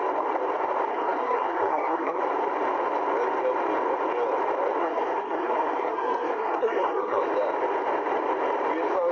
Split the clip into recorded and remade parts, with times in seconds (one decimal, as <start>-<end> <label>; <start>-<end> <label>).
0.0-0.9 recorded; 0.9-2.2 remade; 2.2-4.8 recorded; 4.8-7.2 remade; 7.2-9.1 recorded